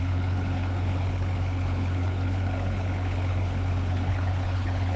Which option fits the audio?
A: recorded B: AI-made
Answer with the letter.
B